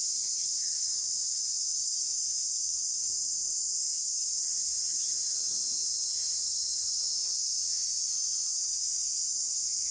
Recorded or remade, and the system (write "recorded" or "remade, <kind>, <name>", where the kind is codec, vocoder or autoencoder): remade, autoencoder, DAC-VAE